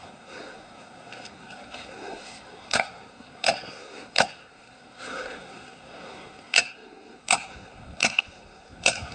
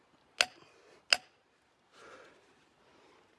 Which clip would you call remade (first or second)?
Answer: first